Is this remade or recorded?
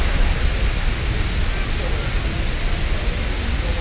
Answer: recorded